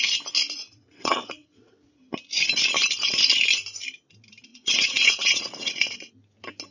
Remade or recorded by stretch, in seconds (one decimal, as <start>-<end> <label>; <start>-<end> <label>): 0.0-0.7 recorded; 0.7-1.9 remade; 1.9-4.5 recorded; 4.5-6.1 remade; 6.1-6.7 recorded